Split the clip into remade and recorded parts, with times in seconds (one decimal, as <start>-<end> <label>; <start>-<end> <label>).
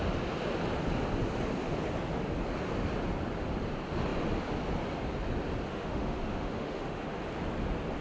0.0-5.7 recorded; 5.7-7.2 remade; 7.2-8.0 recorded